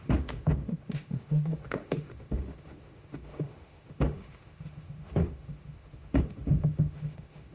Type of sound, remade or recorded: remade